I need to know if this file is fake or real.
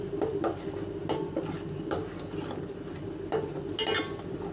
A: real